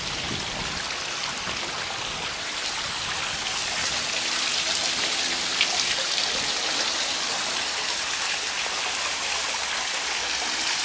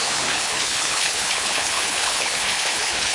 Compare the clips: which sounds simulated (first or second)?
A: second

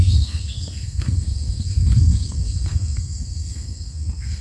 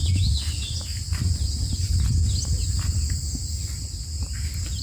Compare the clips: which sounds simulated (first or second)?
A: first